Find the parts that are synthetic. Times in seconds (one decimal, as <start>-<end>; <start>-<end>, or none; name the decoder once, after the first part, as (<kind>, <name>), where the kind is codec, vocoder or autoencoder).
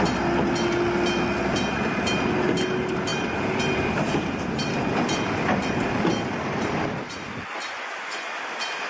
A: 7.6-8.4 (vocoder, Vocos)